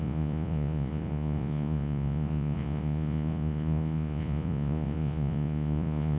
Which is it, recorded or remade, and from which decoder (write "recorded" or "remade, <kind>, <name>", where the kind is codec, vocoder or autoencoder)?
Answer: remade, vocoder, Vocos